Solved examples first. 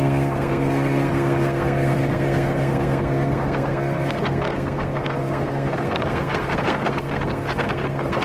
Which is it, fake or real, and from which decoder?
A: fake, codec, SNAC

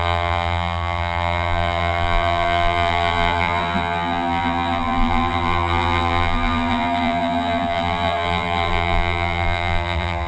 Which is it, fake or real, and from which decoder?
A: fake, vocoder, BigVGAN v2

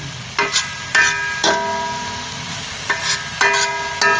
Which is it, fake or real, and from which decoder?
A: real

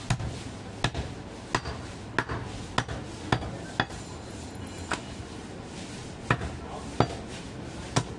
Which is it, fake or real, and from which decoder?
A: real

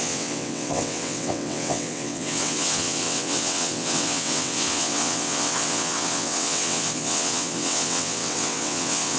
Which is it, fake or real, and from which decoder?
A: fake, vocoder, WaveNeXt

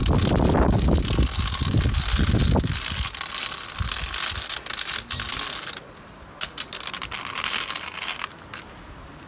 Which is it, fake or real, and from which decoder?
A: real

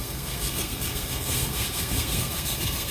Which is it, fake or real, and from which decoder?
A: fake, codec, SNAC